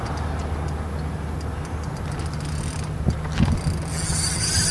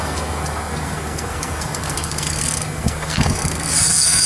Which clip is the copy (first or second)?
second